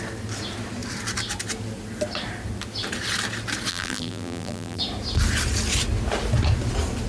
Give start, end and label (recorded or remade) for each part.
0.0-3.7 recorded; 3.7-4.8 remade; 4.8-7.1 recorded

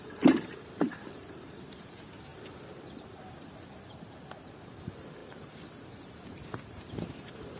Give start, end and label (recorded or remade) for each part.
0.0-2.3 remade; 2.3-4.5 recorded; 4.5-7.6 remade

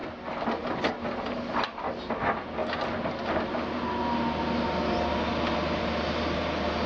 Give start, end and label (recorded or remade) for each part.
0.0-6.9 recorded

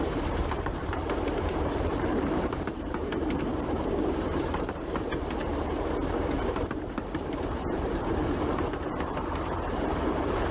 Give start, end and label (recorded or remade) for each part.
0.0-3.0 remade; 3.0-3.5 recorded; 3.5-10.5 remade

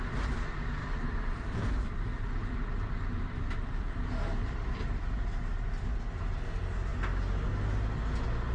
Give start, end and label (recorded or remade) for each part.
0.0-0.8 recorded; 0.8-4.8 remade; 4.8-8.5 recorded